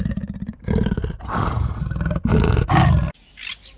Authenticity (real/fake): real